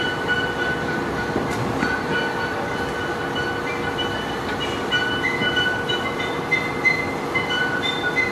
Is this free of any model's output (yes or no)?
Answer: yes